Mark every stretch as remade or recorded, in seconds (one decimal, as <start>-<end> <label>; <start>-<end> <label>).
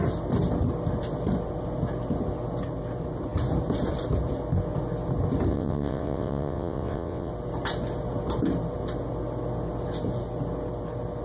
0.0-5.5 recorded; 5.5-7.3 remade; 7.3-11.2 recorded